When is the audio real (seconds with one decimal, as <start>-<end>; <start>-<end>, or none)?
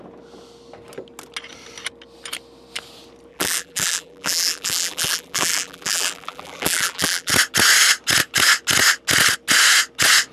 0.0-3.3; 7.3-10.3